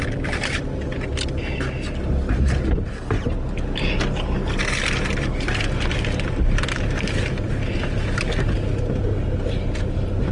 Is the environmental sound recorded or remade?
recorded